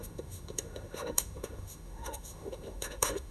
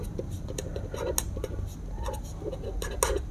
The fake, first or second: first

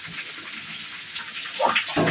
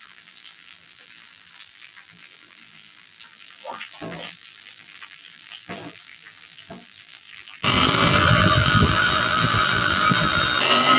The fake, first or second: second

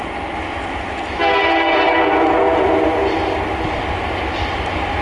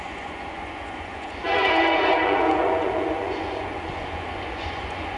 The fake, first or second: second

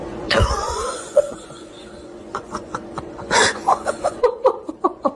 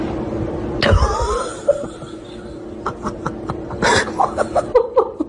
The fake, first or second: first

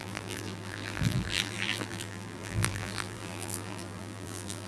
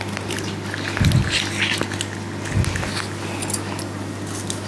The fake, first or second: first